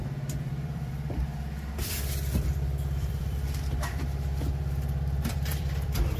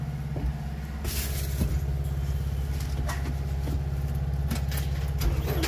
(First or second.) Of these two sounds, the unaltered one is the second